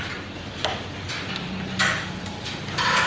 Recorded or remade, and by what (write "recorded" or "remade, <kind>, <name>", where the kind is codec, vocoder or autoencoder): recorded